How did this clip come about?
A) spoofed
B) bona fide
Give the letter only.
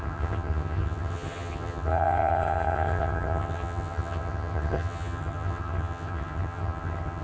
A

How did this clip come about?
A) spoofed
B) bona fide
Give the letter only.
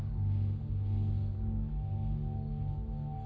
B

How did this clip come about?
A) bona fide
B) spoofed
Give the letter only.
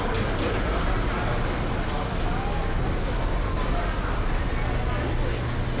A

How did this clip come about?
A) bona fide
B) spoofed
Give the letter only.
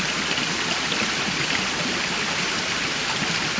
A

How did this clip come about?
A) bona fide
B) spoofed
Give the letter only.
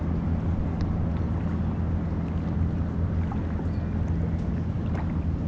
A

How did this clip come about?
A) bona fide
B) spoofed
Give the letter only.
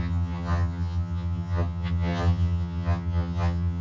B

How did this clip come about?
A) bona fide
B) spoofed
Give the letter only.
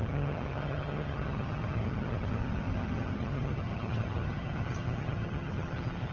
B